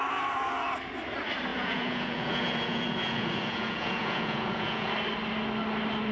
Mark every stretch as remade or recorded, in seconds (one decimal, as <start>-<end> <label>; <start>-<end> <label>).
0.0-1.5 recorded; 1.5-4.9 remade; 4.9-6.1 recorded